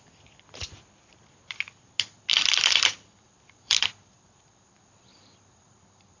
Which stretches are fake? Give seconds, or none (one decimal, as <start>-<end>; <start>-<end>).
2.3-6.2